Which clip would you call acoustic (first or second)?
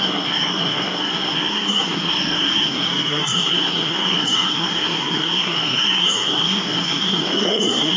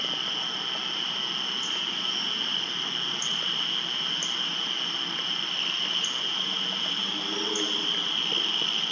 second